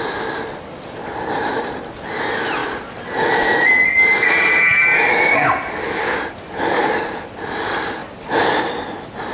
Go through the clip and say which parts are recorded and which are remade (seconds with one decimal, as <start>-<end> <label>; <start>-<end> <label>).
0.0-2.6 recorded; 2.6-7.0 remade; 7.0-8.0 recorded; 8.0-8.6 remade; 8.6-9.3 recorded